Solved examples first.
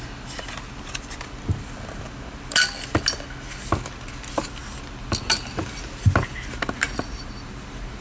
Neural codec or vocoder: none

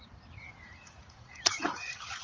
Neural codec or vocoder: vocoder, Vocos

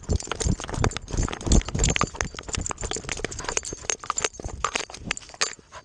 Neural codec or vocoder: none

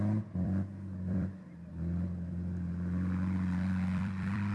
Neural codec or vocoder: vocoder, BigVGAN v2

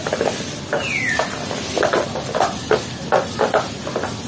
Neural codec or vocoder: none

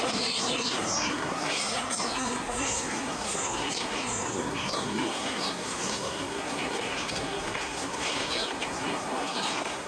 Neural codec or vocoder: codec, SNAC